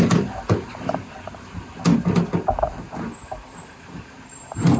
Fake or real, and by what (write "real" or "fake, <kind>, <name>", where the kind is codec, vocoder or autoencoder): real